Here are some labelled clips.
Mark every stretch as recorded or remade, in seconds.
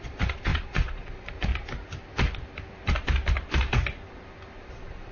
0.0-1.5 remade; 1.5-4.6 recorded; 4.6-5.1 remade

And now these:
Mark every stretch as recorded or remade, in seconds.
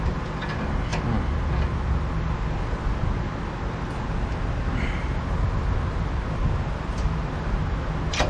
0.0-8.3 recorded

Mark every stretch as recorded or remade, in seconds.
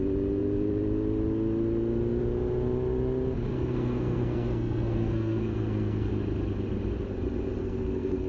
0.0-3.5 recorded; 3.5-6.1 remade; 6.1-7.6 recorded; 7.6-8.3 remade